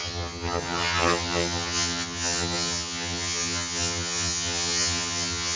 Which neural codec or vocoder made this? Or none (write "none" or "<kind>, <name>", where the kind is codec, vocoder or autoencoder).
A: vocoder, HiFi-GAN